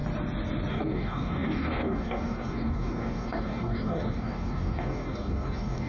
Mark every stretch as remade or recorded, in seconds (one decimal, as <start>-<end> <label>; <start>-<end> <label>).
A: 0.0-0.7 recorded; 0.7-5.9 remade